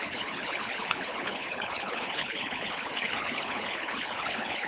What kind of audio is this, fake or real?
fake